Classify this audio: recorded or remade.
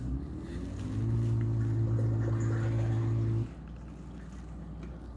recorded